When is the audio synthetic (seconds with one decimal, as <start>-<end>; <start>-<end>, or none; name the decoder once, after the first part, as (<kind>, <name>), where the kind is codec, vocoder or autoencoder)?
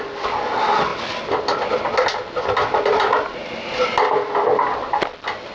none